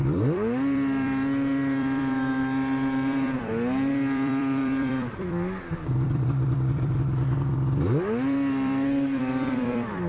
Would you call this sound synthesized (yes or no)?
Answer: yes